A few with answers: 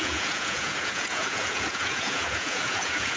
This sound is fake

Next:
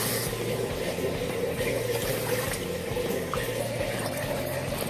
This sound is real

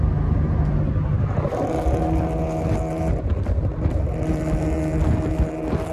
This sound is real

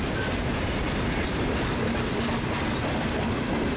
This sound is real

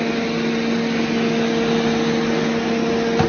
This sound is real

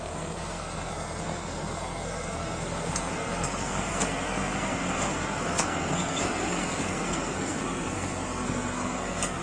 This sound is fake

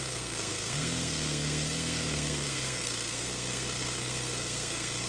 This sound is fake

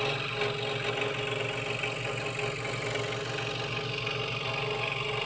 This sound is real